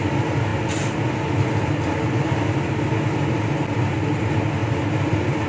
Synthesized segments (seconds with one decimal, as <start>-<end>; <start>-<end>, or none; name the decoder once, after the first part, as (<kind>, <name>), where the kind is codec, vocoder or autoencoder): none